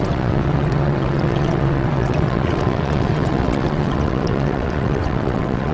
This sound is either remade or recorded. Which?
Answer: remade